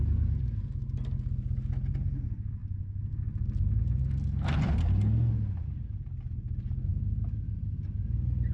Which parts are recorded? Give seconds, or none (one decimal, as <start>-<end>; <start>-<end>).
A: 0.0-4.8; 5.3-8.5